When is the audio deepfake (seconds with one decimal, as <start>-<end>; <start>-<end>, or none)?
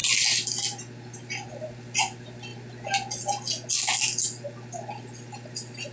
1.5-2.5; 5.0-5.9